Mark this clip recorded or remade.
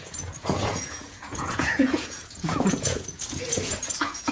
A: remade